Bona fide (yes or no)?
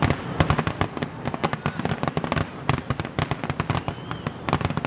yes